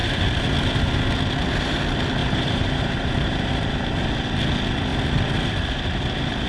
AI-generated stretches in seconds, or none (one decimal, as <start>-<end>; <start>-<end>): 2.2-3.5